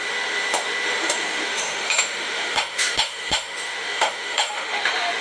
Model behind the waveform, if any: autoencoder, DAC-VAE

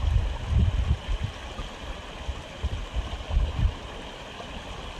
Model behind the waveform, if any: none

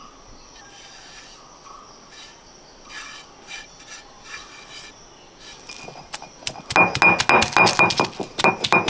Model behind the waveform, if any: none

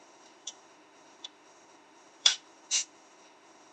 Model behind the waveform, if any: autoencoder, DAC-VAE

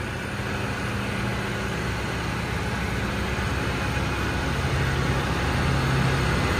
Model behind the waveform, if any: none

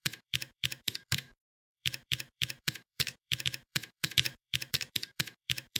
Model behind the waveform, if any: autoencoder, DAC-VAE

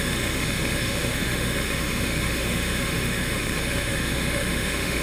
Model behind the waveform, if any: autoencoder, DAC-VAE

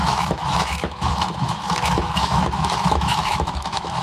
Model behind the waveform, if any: autoencoder, DAC-VAE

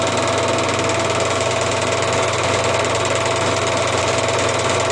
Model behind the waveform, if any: none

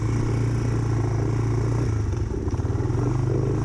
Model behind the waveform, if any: none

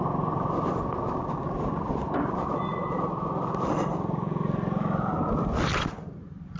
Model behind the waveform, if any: none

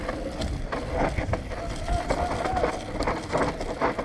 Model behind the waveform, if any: none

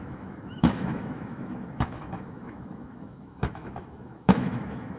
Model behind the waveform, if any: autoencoder, DAC-VAE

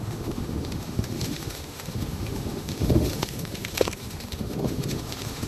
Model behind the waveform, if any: autoencoder, DAC-VAE